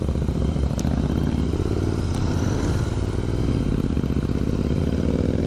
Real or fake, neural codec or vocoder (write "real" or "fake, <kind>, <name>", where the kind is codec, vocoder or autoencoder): real